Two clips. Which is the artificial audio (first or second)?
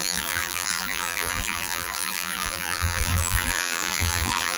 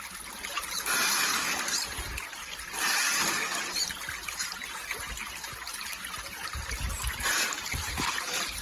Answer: first